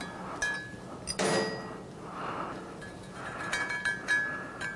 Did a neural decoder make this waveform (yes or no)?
no